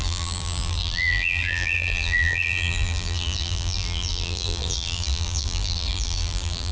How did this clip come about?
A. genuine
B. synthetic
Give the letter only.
B